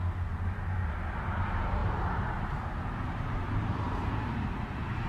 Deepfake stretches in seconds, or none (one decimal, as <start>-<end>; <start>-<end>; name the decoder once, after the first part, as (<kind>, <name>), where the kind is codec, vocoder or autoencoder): 1.8-5.1 (vocoder, BigVGAN v2)